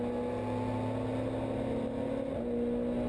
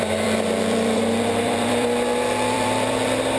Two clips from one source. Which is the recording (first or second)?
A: first